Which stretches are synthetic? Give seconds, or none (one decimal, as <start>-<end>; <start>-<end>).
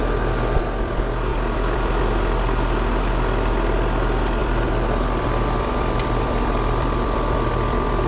1.3-2.0; 4.4-8.1